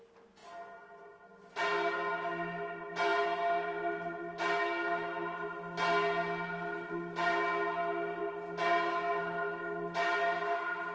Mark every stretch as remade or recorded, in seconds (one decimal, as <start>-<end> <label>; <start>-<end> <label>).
0.0-10.9 recorded

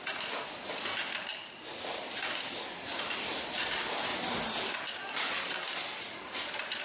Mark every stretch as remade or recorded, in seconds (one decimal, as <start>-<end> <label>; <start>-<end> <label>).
0.0-6.8 recorded

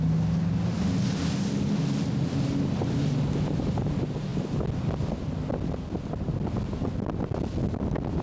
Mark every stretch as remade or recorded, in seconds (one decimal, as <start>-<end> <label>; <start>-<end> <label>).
0.0-8.2 recorded

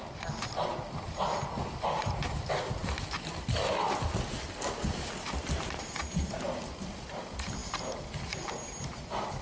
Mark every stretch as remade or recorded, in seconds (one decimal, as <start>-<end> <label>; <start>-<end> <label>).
0.0-9.4 recorded

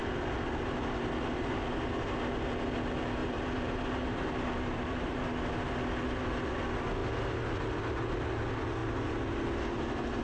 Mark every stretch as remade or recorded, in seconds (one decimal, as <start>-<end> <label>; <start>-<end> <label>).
0.0-3.2 recorded; 3.2-5.2 remade; 5.2-10.2 recorded

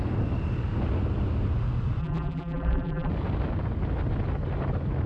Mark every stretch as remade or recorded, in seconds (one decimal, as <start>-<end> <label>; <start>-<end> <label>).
0.0-2.0 recorded; 2.0-3.1 remade; 3.1-5.1 recorded

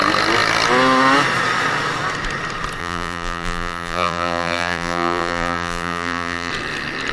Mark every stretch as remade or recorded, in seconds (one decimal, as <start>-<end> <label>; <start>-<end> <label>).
0.0-2.8 recorded; 2.8-6.5 remade; 6.5-7.1 recorded

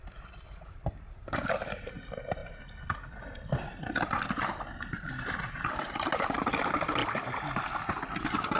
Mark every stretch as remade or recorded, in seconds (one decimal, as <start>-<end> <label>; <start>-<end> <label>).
0.0-2.4 remade; 2.4-5.5 recorded; 5.5-7.0 remade; 7.0-8.2 recorded; 8.2-8.6 remade